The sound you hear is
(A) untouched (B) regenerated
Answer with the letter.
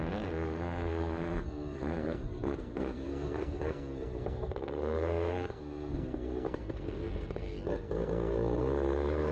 B